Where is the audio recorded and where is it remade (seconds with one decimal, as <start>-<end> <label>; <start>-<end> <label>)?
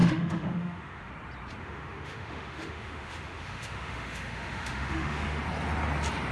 0.0-1.1 remade; 1.1-1.6 recorded; 1.6-5.4 remade; 5.4-6.3 recorded